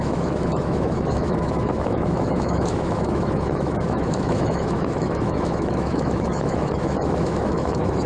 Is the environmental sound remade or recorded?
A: remade